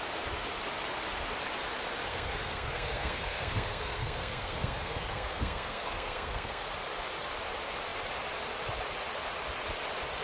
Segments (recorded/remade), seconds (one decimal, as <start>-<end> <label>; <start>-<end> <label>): 0.0-2.1 recorded; 2.1-6.7 remade; 6.7-10.2 recorded